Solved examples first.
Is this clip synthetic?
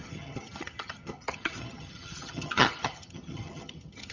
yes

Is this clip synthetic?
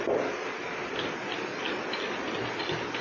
no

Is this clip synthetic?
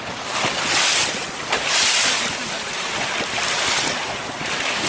no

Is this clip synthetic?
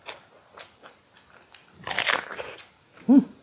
no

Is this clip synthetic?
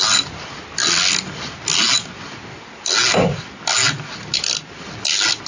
no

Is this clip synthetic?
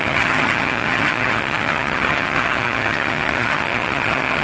yes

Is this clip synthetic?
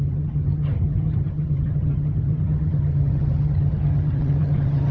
yes